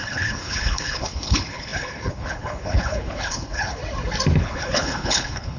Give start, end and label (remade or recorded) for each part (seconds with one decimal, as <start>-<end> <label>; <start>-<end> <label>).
0.0-3.8 remade; 3.8-4.4 recorded; 4.4-5.6 remade